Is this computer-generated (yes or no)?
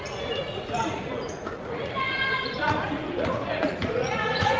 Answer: yes